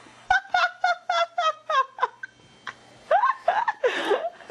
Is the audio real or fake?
real